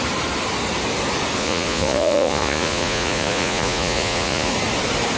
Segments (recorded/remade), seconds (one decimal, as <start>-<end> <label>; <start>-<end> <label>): 0.0-1.4 recorded; 1.4-4.5 remade; 4.5-5.2 recorded